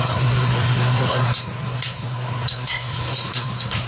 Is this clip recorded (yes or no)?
no